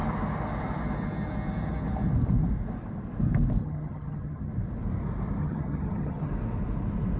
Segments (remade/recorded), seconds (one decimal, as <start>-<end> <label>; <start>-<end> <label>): 0.0-3.6 recorded; 3.6-4.5 remade; 4.5-5.4 recorded; 5.4-6.3 remade; 6.3-7.2 recorded